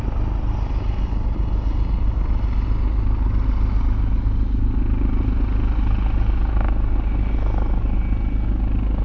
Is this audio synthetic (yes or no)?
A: no